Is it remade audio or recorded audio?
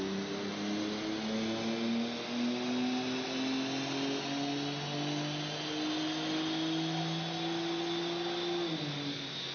recorded